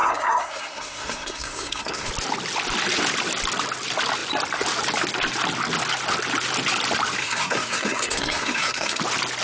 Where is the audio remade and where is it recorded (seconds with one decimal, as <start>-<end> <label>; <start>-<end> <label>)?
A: 0.0-2.1 remade; 2.1-7.2 recorded; 7.2-9.0 remade; 9.0-9.4 recorded